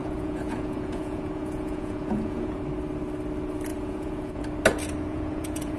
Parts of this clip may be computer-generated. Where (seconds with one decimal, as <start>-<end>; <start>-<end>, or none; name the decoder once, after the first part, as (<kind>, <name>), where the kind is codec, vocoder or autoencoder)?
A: 0.0-2.6 (vocoder, Vocos); 3.7-4.4; 5.1-5.8